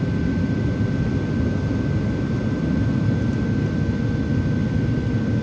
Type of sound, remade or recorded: recorded